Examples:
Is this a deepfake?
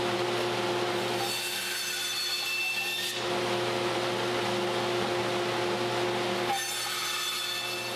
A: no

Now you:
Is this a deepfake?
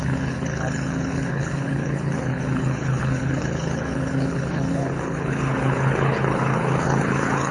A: yes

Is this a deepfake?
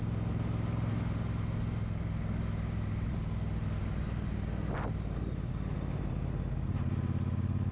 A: no